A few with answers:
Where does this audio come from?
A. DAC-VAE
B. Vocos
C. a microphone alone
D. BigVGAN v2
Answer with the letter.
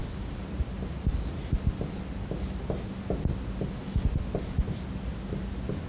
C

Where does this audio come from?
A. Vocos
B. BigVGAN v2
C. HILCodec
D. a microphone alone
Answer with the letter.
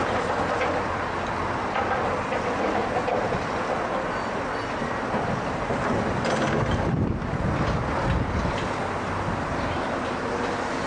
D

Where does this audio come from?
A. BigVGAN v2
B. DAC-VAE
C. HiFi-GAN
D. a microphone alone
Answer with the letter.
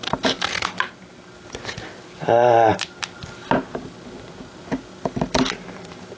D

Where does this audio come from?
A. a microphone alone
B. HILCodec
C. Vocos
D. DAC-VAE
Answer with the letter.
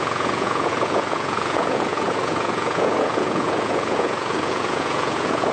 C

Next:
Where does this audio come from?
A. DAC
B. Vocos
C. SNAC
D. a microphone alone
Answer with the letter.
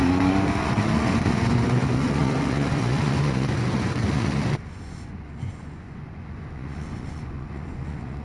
B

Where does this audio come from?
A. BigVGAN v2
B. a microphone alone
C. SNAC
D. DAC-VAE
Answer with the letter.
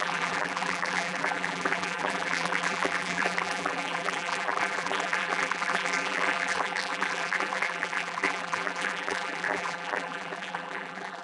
A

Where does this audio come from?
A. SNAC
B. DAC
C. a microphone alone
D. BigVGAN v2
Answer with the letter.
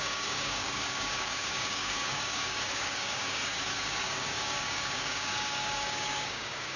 B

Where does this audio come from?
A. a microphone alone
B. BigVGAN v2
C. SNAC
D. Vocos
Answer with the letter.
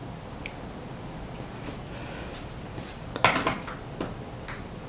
A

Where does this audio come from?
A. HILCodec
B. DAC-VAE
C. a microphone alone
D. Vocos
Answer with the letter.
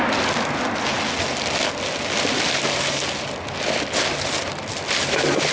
C